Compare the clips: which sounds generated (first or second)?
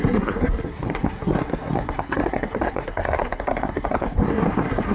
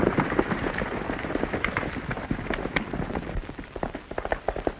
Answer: first